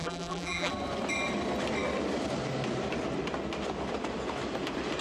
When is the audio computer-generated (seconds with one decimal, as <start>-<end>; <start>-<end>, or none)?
0.0-0.7